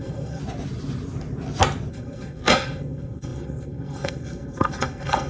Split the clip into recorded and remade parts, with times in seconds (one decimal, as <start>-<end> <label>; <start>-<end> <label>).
0.0-0.4 remade; 0.4-1.9 recorded; 1.9-5.3 remade